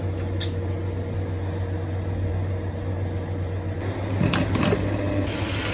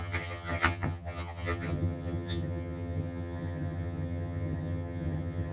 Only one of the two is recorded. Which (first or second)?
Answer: first